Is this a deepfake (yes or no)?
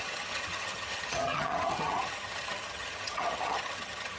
yes